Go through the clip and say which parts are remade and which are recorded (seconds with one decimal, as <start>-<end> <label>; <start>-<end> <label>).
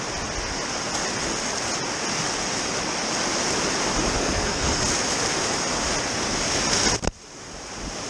0.0-4.2 recorded; 4.2-4.8 remade; 4.8-8.1 recorded